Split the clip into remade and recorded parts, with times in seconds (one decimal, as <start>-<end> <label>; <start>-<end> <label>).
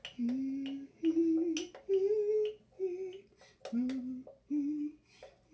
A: 0.0-5.5 recorded